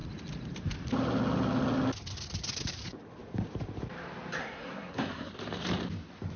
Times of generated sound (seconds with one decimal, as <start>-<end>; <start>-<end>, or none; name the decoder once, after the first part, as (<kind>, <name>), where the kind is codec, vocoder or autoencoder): 4.4-5.3 (codec, SNAC)